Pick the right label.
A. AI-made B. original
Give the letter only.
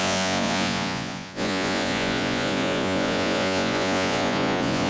A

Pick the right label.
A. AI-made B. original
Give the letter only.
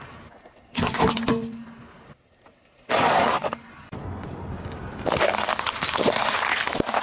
B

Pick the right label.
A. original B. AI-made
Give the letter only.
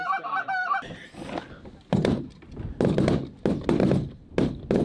A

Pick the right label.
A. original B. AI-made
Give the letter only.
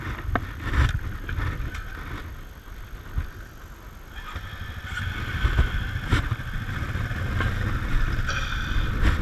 A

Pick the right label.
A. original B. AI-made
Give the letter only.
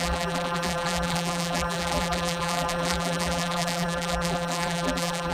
B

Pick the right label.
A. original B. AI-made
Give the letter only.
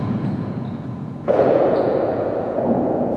B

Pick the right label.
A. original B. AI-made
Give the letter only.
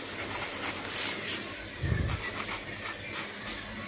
A